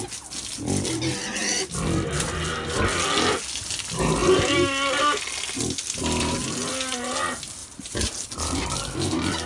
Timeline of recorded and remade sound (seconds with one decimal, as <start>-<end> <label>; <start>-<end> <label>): 0.0-7.6 recorded; 7.6-8.7 remade; 8.7-9.5 recorded